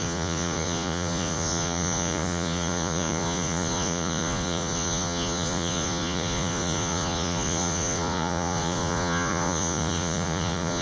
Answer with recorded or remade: remade